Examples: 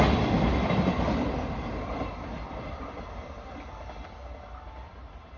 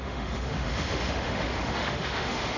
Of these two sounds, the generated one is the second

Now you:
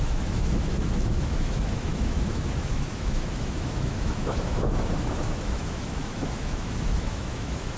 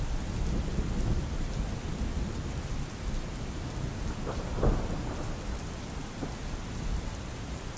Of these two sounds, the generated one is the first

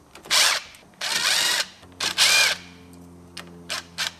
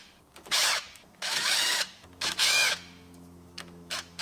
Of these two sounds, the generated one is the second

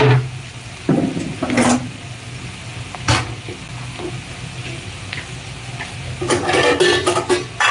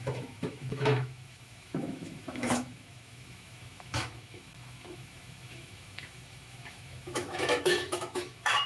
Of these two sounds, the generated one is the second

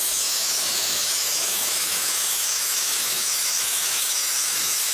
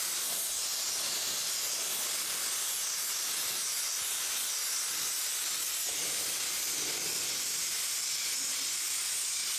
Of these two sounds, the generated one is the first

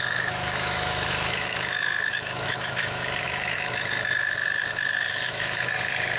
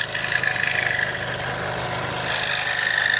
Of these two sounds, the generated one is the first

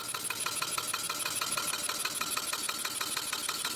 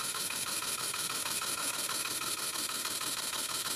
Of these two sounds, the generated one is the second